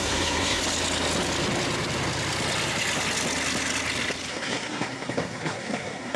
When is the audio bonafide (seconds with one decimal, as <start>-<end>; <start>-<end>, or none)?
0.6-4.3